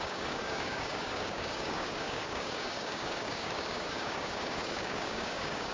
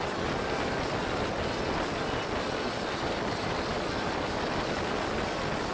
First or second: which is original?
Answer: second